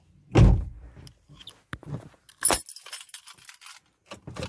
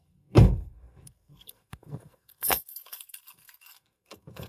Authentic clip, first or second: first